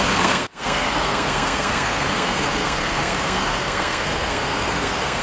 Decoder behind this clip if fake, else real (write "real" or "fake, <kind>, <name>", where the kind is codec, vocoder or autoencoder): fake, codec, SNAC